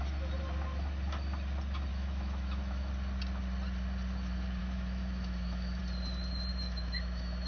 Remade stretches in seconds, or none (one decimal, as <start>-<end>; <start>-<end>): 1.9-2.9; 4.6-5.8; 6.5-7.5